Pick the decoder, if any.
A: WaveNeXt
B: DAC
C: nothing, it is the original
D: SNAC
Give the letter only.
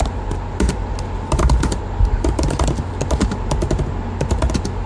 C